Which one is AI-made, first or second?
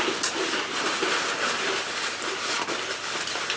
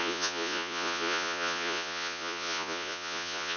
second